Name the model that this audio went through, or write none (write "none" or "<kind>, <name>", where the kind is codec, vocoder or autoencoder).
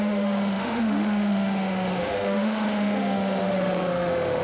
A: autoencoder, DAC-VAE